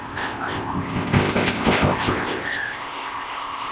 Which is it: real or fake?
fake